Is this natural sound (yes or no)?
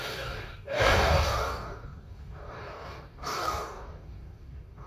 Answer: no